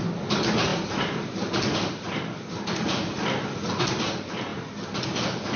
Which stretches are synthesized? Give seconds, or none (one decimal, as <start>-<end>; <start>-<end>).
0.7-3.8; 4.5-5.6